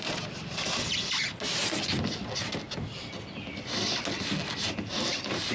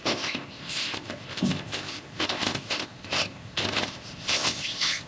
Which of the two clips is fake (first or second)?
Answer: second